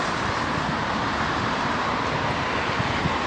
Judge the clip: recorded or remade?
recorded